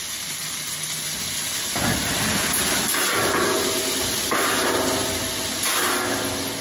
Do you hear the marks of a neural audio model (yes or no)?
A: no